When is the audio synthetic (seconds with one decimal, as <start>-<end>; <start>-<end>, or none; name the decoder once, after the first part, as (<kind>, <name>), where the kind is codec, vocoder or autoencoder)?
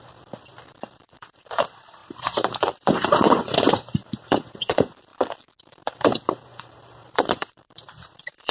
0.0-5.1 (vocoder, BigVGAN v2); 5.6-8.5